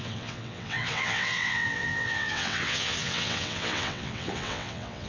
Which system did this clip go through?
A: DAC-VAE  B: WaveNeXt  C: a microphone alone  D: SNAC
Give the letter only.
B